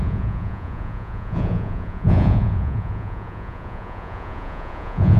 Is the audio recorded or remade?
remade